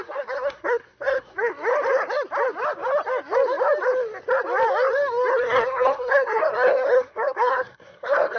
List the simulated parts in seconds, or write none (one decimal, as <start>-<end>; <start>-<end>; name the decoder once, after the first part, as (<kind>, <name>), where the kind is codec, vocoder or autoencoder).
0.0-1.5 (codec, SNAC); 5.4-8.4